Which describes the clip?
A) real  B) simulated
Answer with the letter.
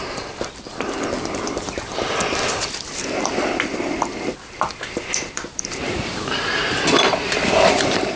B